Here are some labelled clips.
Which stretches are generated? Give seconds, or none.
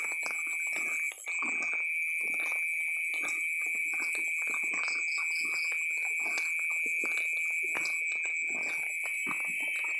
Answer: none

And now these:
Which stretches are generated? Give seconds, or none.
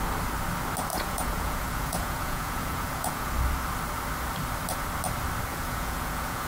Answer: 0.9-3.3; 5.5-6.5